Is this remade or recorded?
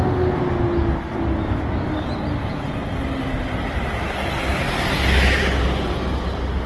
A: recorded